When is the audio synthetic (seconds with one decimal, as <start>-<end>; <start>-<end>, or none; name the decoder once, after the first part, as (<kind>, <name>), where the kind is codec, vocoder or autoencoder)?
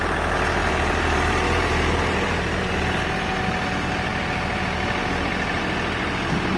0.6-2.8 (vocoder, BigVGAN v2)